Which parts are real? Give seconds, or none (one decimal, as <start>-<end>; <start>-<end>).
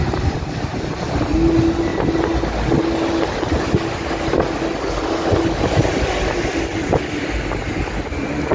0.0-8.5